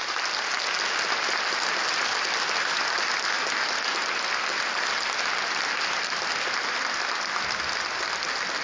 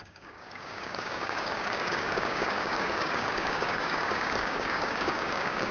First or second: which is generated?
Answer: second